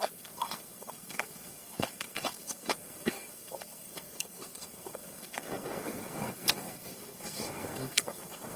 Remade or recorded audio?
remade